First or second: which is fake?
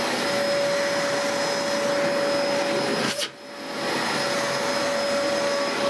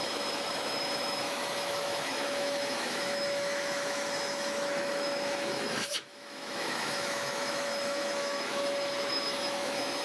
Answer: second